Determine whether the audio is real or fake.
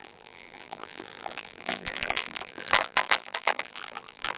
fake